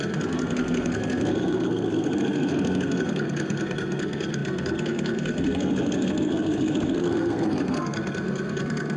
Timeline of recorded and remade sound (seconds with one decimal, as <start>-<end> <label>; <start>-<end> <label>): 0.0-9.0 remade